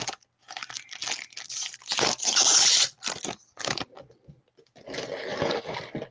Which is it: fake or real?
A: real